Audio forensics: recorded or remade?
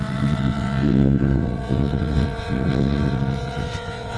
remade